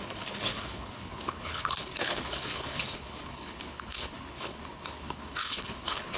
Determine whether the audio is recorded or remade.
remade